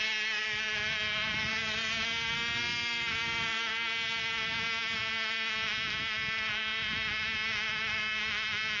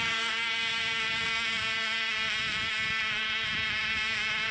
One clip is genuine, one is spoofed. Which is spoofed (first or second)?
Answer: second